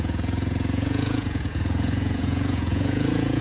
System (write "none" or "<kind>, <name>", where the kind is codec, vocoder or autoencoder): vocoder, Vocos